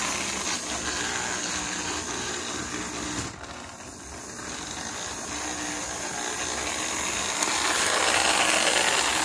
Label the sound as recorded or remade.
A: recorded